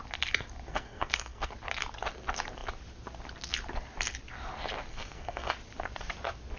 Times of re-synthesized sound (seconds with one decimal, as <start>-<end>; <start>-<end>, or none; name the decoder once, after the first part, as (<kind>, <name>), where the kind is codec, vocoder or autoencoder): 0.7-1.5 (codec, SNAC); 4.9-5.5